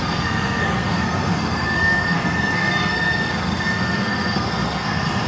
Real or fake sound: fake